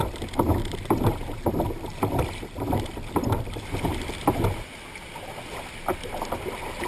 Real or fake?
real